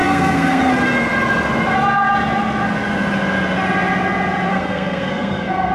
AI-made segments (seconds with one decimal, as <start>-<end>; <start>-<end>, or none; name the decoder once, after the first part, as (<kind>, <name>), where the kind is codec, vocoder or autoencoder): 0.0-0.7 (codec, SNAC); 4.5-5.7